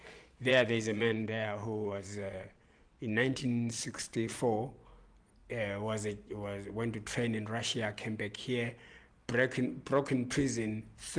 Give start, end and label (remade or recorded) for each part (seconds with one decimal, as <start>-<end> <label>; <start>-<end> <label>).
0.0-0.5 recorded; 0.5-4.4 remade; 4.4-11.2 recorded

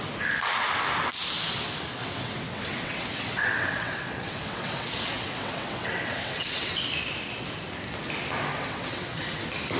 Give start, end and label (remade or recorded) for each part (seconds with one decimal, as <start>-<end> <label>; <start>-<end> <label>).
0.0-2.0 recorded; 2.0-6.8 remade; 6.8-8.5 recorded; 8.5-9.4 remade; 9.4-9.8 recorded

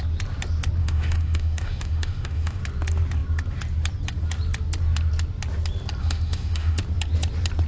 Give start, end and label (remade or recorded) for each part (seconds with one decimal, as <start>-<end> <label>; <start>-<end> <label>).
0.0-0.8 recorded; 0.8-2.6 remade; 2.6-6.0 recorded; 6.0-6.8 remade; 6.8-7.7 recorded